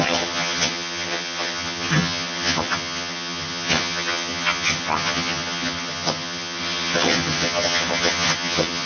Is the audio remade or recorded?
remade